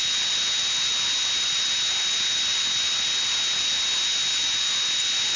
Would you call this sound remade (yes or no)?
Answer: no